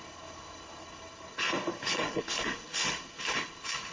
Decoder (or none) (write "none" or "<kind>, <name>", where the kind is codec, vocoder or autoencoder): codec, HILCodec